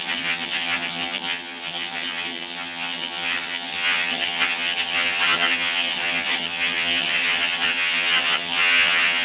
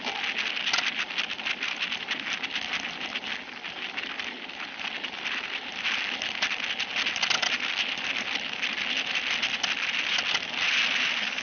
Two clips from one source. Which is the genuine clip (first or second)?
second